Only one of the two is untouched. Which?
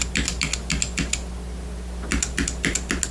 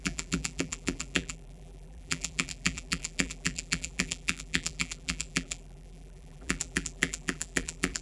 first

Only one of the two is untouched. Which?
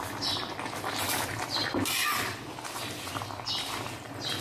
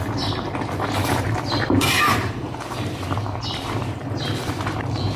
first